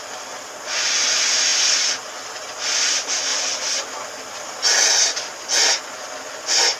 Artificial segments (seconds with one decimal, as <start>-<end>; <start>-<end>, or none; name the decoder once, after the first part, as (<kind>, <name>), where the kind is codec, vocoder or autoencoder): none